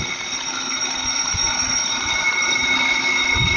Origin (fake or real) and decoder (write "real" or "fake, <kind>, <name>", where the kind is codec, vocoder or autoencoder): fake, vocoder, BigVGAN v2